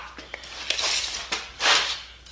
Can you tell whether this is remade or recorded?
recorded